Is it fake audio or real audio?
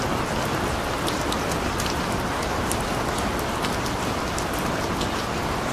real